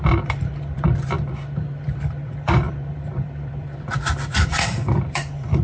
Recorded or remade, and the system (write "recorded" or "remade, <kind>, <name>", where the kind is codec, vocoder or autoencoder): remade, vocoder, BigVGAN v2